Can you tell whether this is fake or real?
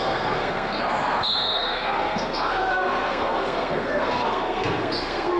fake